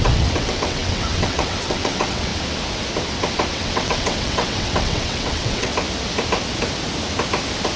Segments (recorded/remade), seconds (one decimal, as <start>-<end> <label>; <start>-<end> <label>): 0.0-2.3 remade; 2.3-3.5 recorded; 3.5-5.7 remade; 5.7-7.8 recorded